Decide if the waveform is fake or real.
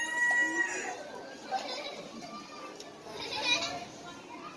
real